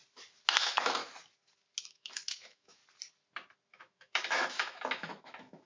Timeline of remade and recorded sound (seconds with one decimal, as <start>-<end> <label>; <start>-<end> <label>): 0.0-0.5 recorded; 0.5-1.0 remade; 1.0-1.8 recorded; 1.8-2.8 remade; 2.8-3.7 recorded; 3.7-5.7 remade

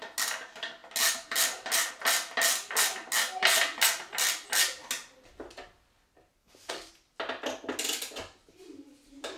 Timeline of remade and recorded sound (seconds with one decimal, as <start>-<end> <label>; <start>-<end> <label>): 0.0-6.4 recorded; 6.4-6.9 remade; 6.9-9.4 recorded

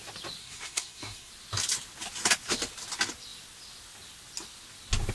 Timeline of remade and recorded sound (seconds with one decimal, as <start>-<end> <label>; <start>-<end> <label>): 0.0-0.4 recorded; 0.4-1.3 remade; 1.3-5.1 recorded

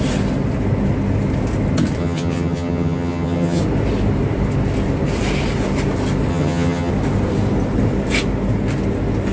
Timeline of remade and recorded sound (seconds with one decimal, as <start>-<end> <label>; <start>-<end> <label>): 0.0-2.0 recorded; 2.0-3.6 remade; 3.6-6.3 recorded; 6.3-6.9 remade; 6.9-9.3 recorded

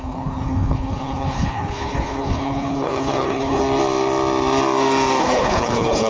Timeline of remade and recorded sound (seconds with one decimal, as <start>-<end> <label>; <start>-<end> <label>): 0.0-3.6 remade; 3.6-5.2 recorded; 5.2-6.1 remade

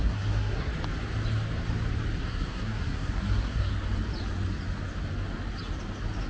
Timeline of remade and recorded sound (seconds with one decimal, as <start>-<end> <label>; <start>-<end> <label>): 0.0-0.7 remade; 0.7-2.2 recorded; 2.2-3.7 remade; 3.7-6.3 recorded

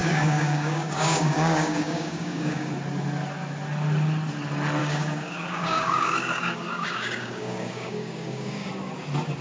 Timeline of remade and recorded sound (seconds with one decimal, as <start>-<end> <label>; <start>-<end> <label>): 0.0-2.7 remade; 2.7-4.8 recorded; 4.8-8.7 remade; 8.7-9.4 recorded

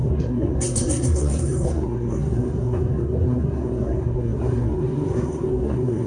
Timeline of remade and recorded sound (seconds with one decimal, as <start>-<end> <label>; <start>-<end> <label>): 0.0-6.1 remade